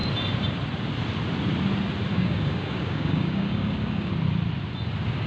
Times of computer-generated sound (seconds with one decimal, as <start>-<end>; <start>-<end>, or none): 2.1-4.1

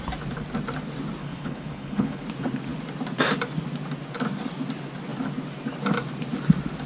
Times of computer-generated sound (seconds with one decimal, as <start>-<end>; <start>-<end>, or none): 1.2-2.2

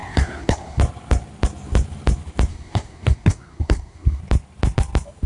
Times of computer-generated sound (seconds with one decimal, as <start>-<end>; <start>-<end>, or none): 0.0-0.8; 2.5-4.2

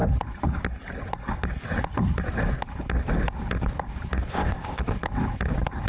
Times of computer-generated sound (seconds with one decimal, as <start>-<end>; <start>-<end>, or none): 4.3-4.8

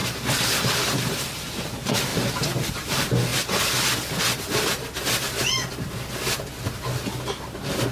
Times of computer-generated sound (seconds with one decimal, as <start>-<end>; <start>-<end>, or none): 0.7-2.1; 2.7-3.3; 7.3-7.9

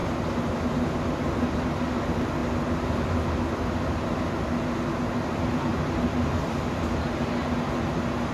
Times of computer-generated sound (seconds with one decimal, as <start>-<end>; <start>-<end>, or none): none

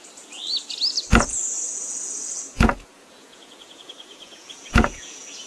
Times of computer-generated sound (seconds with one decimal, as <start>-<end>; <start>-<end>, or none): 0.0-0.4; 1.2-5.5